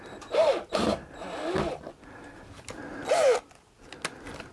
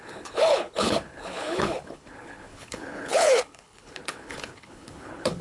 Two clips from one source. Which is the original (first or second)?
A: first